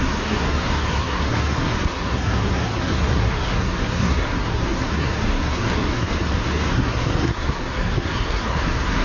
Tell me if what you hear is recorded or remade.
remade